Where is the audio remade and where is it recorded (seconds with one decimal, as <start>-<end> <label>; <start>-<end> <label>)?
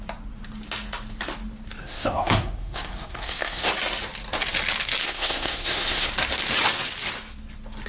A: 0.0-1.8 recorded; 1.8-3.7 remade; 3.7-5.0 recorded; 5.0-6.1 remade; 6.1-7.9 recorded